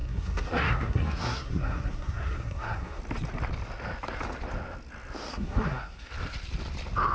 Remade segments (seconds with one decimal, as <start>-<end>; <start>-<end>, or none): 0.0-3.0; 5.3-6.1

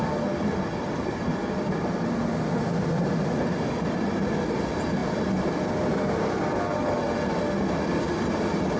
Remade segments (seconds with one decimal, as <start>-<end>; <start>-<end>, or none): none

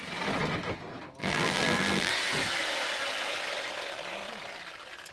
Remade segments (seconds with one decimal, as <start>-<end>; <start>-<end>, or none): 1.2-2.1

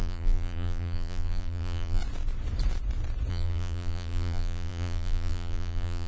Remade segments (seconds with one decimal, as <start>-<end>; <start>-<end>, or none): 0.0-2.0; 3.3-6.1

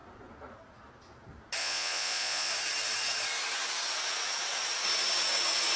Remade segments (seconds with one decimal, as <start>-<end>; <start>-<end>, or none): 1.6-2.5

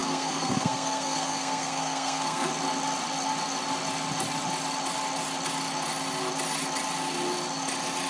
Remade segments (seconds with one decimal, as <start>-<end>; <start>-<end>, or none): 0.0-2.5

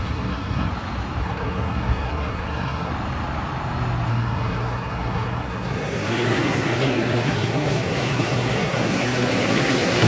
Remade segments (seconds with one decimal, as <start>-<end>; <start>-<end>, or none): 0.0-0.7; 1.2-2.9; 4.1-10.1

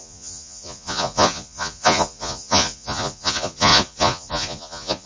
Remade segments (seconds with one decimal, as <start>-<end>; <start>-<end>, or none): 0.0-5.1